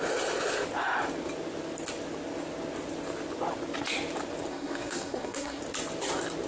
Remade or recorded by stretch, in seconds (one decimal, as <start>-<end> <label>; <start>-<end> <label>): 0.0-4.5 recorded; 4.5-5.6 remade; 5.6-6.5 recorded